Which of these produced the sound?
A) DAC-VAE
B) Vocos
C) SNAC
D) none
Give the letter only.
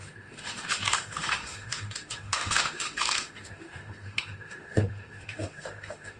A